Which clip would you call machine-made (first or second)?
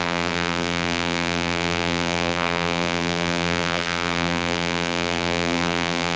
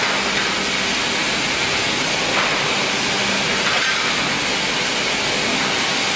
first